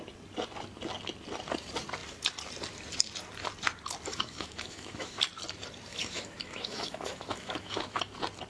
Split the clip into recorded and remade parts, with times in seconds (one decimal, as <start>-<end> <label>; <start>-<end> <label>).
0.0-4.1 recorded; 4.1-5.2 remade; 5.2-5.9 recorded; 5.9-8.0 remade; 8.0-8.5 recorded